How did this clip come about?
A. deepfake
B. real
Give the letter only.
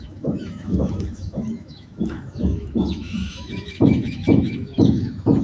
A